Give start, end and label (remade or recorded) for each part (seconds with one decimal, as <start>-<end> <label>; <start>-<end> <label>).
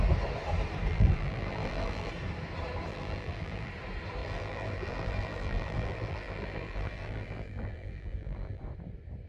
0.0-0.9 recorded; 0.9-2.1 remade; 2.1-2.9 recorded; 2.9-3.7 remade; 3.7-4.2 recorded; 4.2-8.6 remade; 8.6-9.3 recorded